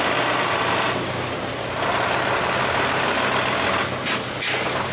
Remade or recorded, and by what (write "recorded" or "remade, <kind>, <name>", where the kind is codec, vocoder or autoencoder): recorded